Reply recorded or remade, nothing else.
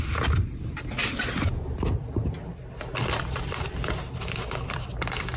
recorded